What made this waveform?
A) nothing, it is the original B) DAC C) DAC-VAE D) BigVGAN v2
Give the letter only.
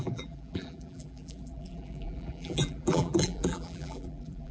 D